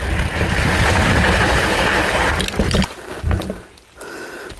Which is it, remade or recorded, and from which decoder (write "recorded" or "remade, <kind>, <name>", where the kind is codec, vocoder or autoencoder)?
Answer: recorded